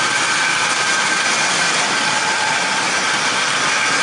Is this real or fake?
real